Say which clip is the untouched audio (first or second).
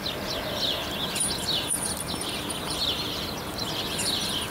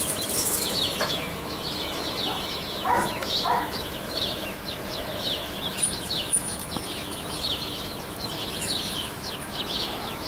first